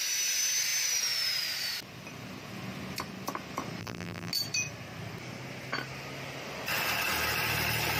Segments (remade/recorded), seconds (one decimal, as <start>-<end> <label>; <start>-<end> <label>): 0.0-3.8 recorded; 3.8-4.3 remade; 4.3-8.0 recorded